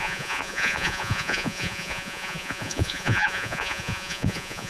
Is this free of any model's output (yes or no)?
no